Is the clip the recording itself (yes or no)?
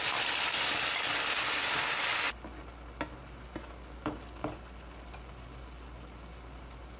yes